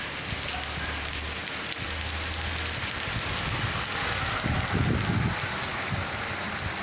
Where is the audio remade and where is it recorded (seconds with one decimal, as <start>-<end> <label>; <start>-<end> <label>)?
0.0-6.8 recorded